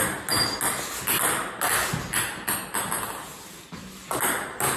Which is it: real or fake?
real